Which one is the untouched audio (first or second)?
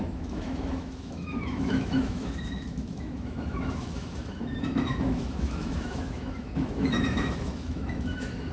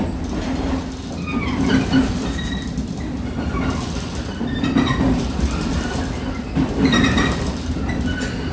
second